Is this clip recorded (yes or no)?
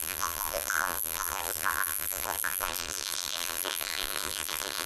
no